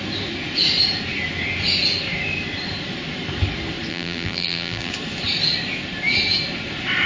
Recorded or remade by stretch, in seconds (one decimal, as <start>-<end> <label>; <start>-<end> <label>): 0.0-3.9 recorded; 3.9-4.9 remade; 4.9-7.1 recorded